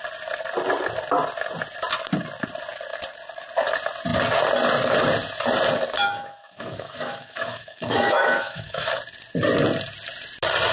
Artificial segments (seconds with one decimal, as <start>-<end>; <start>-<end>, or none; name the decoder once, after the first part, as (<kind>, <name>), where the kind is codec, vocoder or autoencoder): 6.0-9.0 (autoencoder, DAC-VAE)